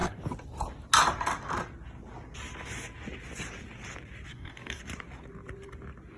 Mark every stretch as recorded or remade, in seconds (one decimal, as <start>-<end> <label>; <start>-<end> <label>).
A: 0.0-4.3 recorded; 4.3-4.8 remade; 4.8-6.2 recorded